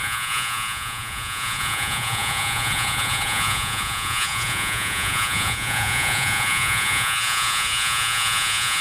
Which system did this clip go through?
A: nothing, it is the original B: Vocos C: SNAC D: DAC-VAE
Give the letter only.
B